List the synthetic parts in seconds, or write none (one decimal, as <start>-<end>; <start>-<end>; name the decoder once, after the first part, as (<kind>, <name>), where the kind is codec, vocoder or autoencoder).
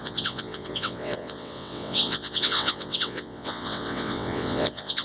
0.0-5.0 (vocoder, WaveNeXt)